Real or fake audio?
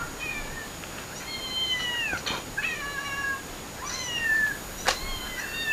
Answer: real